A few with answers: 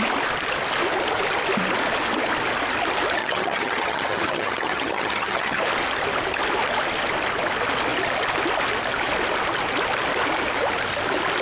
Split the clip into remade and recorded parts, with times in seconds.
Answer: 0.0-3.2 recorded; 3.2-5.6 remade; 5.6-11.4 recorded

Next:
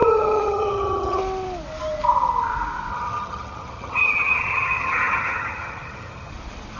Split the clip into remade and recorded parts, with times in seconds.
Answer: 0.0-1.2 remade; 1.2-2.9 recorded; 2.9-6.3 remade; 6.3-6.8 recorded

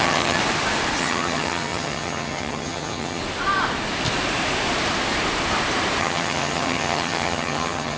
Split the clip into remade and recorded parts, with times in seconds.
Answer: 0.0-0.4 remade; 0.4-1.0 recorded; 1.0-3.2 remade; 3.2-6.0 recorded; 6.0-8.0 remade

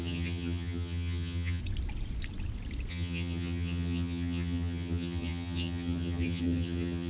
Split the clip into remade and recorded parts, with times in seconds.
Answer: 0.0-1.6 remade; 1.6-2.9 recorded; 2.9-7.1 remade

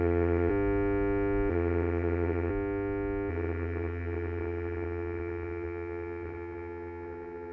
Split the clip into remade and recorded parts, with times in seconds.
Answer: 0.0-0.5 remade; 0.5-1.5 recorded; 1.5-2.5 remade; 2.5-3.3 recorded; 3.3-7.5 remade

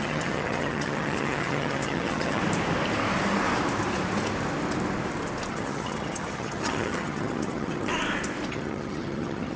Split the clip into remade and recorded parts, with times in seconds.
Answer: 0.0-2.4 remade; 2.4-5.5 recorded; 5.5-7.9 remade; 7.9-8.5 recorded; 8.5-9.6 remade